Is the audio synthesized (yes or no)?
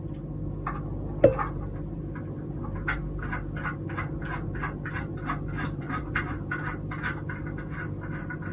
no